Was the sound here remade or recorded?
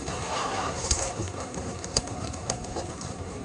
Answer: remade